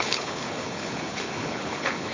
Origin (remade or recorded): remade